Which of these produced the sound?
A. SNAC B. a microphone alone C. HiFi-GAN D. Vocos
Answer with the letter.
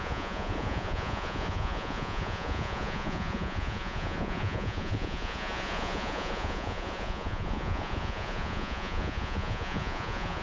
D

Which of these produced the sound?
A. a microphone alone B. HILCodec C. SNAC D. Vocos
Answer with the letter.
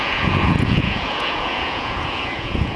D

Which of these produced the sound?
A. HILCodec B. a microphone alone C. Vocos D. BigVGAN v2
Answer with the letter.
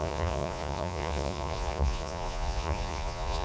C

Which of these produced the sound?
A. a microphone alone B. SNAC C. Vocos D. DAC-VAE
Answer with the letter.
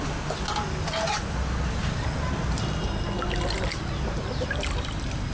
A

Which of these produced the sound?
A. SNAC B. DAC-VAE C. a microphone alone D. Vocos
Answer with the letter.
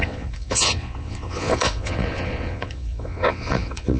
D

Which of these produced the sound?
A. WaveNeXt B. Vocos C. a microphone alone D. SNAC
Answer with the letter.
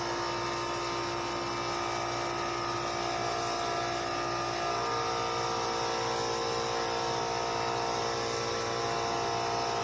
C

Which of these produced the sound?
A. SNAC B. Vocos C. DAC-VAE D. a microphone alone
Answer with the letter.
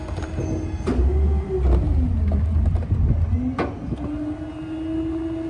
D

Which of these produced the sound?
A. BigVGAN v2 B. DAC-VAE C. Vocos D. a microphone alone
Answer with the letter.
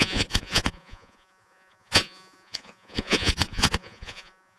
C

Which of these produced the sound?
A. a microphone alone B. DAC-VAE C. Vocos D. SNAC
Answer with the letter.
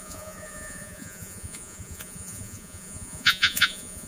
C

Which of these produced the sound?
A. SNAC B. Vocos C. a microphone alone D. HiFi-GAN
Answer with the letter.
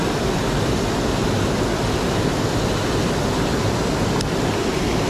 C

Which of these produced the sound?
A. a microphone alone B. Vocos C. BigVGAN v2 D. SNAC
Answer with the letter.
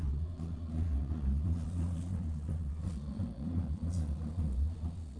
B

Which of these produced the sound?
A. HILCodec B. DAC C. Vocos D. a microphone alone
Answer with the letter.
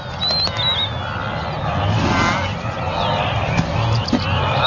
D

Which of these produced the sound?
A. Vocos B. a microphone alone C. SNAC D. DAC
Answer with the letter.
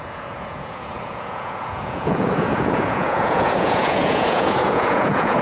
A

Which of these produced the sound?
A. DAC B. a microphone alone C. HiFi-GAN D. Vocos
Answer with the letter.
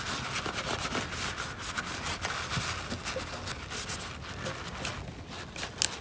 B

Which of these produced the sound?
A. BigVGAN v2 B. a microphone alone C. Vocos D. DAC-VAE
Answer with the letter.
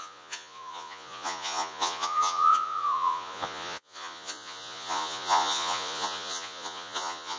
C